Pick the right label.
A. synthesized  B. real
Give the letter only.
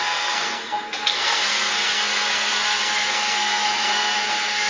A